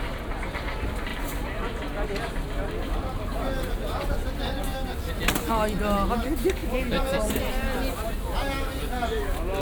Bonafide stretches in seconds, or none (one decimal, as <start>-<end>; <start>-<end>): 0.0-9.6